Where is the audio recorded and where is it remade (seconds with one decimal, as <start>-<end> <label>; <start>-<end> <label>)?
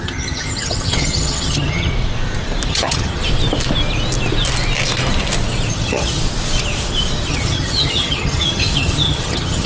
0.0-1.9 remade; 1.9-2.7 recorded; 2.7-3.2 remade; 3.2-5.7 recorded; 5.7-6.2 remade; 6.2-7.3 recorded; 7.3-9.7 remade